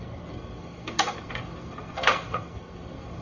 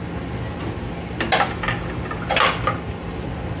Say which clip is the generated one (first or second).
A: first